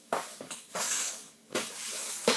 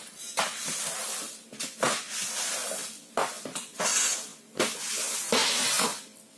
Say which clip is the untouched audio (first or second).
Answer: second